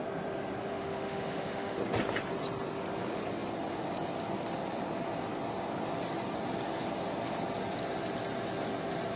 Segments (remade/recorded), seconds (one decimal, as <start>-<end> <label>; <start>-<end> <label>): 0.0-0.7 recorded; 0.7-1.8 remade; 1.8-9.2 recorded